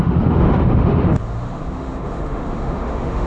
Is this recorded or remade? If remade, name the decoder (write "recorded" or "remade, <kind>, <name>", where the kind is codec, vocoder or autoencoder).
remade, autoencoder, DAC-VAE